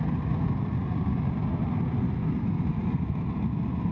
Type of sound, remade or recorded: recorded